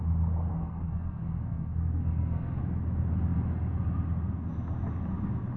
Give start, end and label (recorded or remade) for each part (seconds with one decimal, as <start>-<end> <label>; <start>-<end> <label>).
0.0-0.5 recorded; 0.5-2.6 remade; 2.6-5.6 recorded